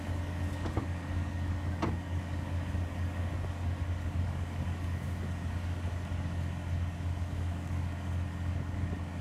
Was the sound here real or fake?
fake